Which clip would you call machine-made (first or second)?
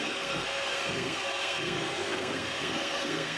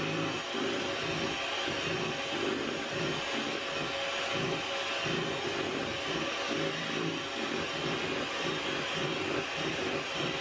first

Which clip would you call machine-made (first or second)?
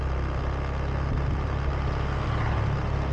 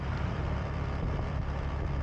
second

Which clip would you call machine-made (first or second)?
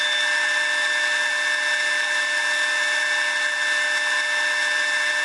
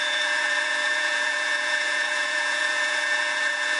second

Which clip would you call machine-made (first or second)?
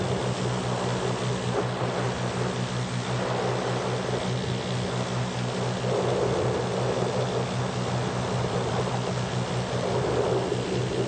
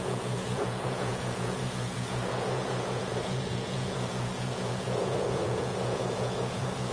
second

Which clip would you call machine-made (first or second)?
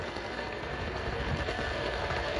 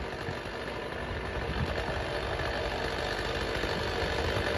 first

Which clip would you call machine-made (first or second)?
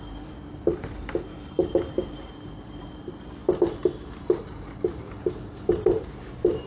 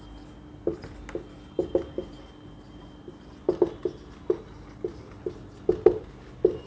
first